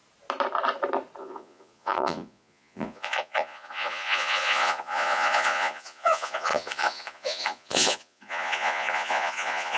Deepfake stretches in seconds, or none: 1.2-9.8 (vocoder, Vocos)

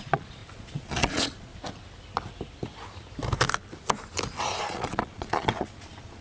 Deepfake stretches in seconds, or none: 0.0-1.5 (vocoder, Vocos); 4.6-6.2

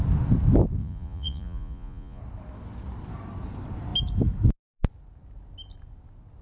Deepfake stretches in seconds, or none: 0.8-2.2 (vocoder, Vocos)

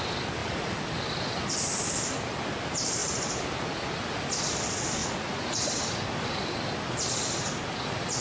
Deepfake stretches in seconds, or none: 5.0-5.6 (vocoder, Vocos)